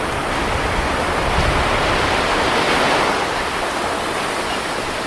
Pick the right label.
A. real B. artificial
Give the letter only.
A